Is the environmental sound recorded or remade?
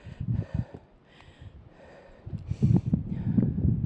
recorded